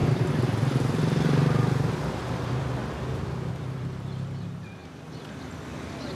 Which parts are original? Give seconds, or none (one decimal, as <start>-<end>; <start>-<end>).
2.8-3.5

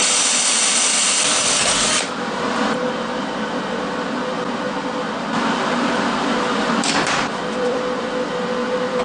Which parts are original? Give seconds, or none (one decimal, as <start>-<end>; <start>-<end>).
none

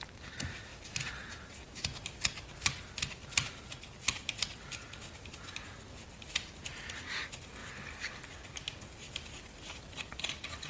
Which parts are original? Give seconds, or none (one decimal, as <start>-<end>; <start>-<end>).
0.0-10.7

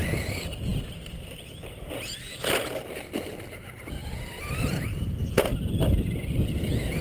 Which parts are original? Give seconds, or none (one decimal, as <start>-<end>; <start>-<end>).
0.0-7.0

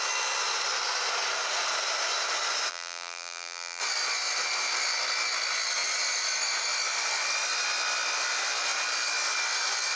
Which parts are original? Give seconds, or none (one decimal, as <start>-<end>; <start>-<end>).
0.0-2.7; 3.8-10.0